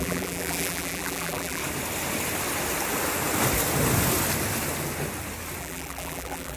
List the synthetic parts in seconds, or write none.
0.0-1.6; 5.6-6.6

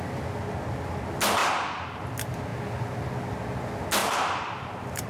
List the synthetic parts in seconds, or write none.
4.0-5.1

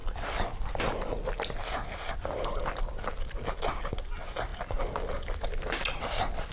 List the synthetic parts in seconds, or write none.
none